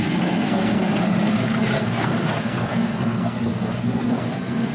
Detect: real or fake fake